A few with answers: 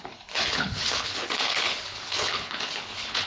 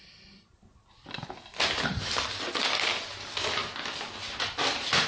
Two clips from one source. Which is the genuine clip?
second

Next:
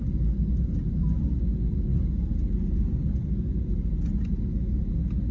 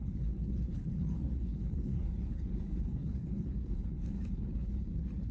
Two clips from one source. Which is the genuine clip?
first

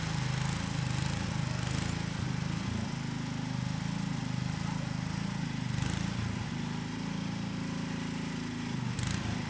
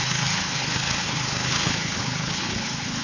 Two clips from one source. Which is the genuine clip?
first